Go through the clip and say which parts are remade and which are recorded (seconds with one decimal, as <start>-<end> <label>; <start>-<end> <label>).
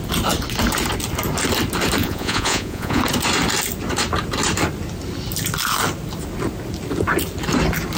0.0-2.0 recorded; 2.0-3.0 remade; 3.0-8.0 recorded